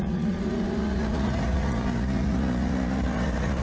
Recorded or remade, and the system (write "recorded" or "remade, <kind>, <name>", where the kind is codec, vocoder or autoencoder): remade, vocoder, Vocos